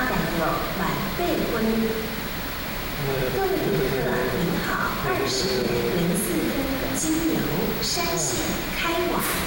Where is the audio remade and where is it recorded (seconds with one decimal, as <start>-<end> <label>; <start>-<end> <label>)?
0.0-9.5 recorded